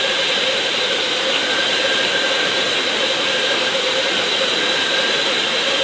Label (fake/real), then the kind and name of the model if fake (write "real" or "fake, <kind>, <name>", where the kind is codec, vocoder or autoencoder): fake, vocoder, BigVGAN v2